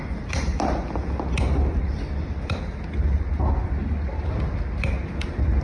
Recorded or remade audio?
recorded